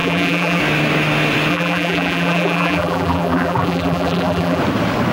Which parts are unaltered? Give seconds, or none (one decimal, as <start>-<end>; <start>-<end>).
0.6-1.5; 4.6-5.1